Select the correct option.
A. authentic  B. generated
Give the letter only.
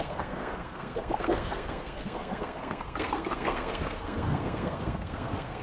B